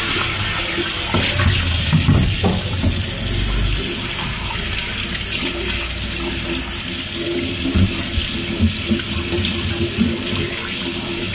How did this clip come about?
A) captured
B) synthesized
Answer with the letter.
A